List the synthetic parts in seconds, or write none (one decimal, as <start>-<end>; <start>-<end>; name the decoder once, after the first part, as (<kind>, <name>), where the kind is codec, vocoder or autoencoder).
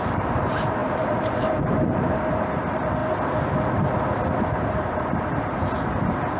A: 0.0-3.0 (vocoder, BigVGAN v2); 4.4-5.6